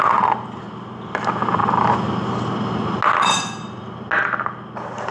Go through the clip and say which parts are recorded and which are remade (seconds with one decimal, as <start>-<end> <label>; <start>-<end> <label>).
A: 0.0-5.1 recorded